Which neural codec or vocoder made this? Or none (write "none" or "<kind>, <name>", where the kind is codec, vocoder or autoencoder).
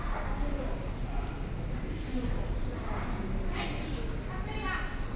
none